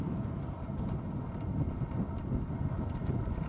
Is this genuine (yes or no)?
yes